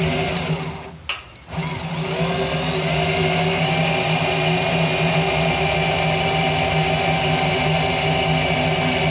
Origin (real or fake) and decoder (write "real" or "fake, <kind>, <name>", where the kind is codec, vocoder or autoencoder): real